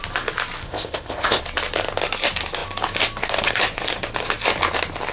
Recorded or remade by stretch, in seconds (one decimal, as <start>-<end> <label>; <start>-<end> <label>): 0.0-0.6 recorded; 0.6-1.4 remade; 1.4-5.1 recorded